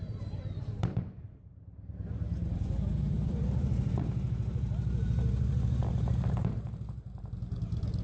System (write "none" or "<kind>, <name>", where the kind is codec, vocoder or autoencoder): vocoder, BigVGAN v2